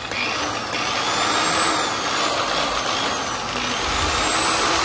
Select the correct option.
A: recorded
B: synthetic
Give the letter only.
A